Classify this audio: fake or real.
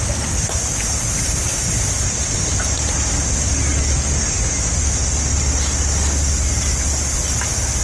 real